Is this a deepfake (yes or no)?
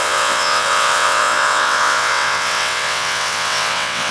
yes